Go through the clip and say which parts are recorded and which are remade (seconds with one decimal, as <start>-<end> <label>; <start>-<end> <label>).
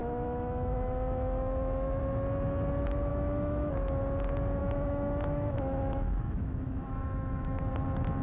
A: 0.0-2.0 remade; 2.0-3.1 recorded; 3.1-3.7 remade; 3.7-4.6 recorded; 4.6-7.7 remade; 7.7-8.2 recorded